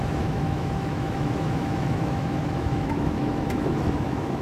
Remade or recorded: remade